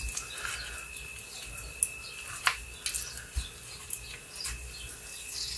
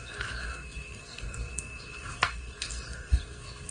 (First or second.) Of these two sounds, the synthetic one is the second